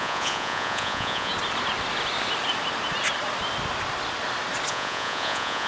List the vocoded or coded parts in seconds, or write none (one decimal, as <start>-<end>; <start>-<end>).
0.0-1.3; 4.7-5.7